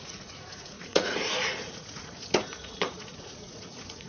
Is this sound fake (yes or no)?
yes